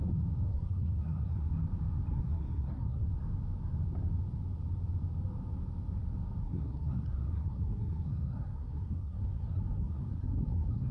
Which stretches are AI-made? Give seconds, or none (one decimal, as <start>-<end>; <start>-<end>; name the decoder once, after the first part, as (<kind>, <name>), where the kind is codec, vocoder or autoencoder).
0.5-1.5 (codec, SNAC); 2.1-3.1; 6.4-10.9